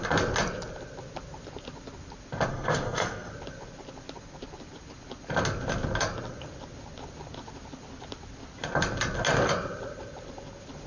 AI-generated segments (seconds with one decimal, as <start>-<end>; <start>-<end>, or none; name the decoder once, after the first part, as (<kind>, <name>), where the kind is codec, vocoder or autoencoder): 2.5-3.3 (codec, SNAC)